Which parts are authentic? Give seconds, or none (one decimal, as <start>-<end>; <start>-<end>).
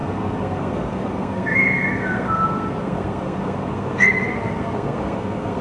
none